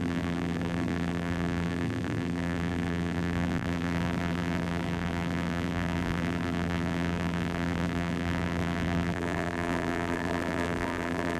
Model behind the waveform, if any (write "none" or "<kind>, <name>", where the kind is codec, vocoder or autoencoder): vocoder, BigVGAN v2